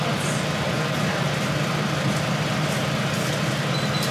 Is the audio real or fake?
real